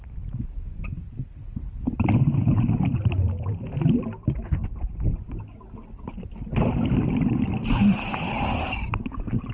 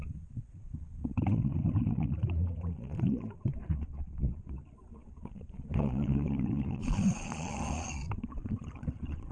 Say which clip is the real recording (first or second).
first